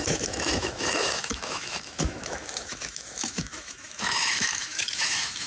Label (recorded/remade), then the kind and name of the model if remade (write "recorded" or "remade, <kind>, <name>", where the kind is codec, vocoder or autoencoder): remade, autoencoder, DAC-VAE